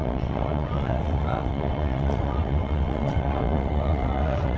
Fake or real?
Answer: fake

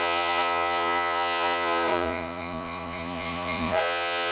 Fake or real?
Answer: fake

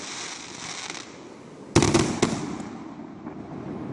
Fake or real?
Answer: real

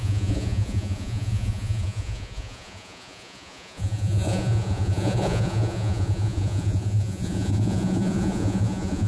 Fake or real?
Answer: fake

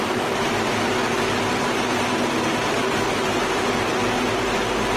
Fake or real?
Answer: real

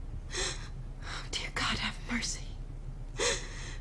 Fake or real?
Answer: real